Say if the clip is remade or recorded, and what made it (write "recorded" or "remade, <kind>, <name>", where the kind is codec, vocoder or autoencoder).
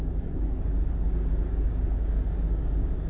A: remade, codec, DAC